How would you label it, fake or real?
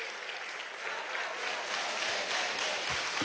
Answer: real